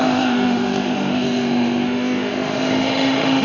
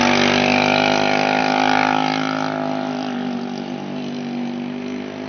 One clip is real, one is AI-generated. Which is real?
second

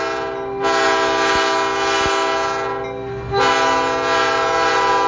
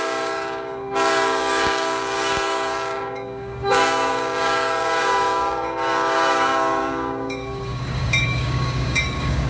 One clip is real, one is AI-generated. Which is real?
first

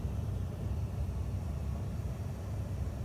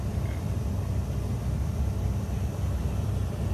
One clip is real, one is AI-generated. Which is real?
second